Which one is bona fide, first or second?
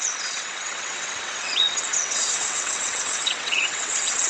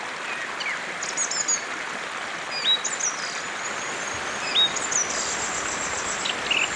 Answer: second